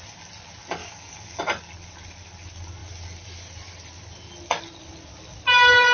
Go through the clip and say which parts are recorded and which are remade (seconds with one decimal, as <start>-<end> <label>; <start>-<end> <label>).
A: 0.0-0.8 recorded; 0.8-1.4 remade; 1.4-5.9 recorded